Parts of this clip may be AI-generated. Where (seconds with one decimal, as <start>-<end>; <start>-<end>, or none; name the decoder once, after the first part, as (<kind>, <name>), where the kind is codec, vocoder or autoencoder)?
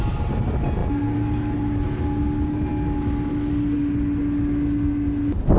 none